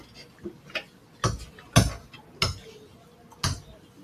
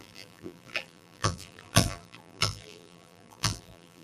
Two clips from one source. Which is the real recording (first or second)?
first